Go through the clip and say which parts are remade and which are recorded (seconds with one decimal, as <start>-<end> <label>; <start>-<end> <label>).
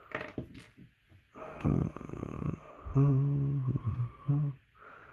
0.0-1.4 recorded; 1.4-2.7 remade; 2.7-3.8 recorded; 3.8-4.3 remade; 4.3-5.1 recorded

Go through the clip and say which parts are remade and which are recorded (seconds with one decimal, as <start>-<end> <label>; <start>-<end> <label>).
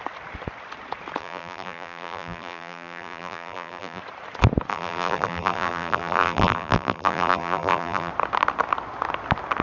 0.0-1.2 recorded; 1.2-4.0 remade; 4.0-4.7 recorded; 4.7-8.1 remade; 8.1-9.6 recorded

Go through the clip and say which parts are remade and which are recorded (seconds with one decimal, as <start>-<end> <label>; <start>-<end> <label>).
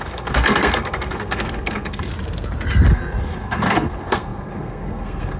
0.0-2.1 remade; 2.1-2.9 recorded; 2.9-5.4 remade